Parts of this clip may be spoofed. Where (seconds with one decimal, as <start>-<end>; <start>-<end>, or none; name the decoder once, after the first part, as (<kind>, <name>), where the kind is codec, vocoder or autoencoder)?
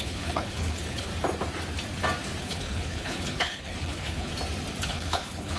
0.0-1.1 (codec, HILCodec); 2.4-4.3; 4.9-5.6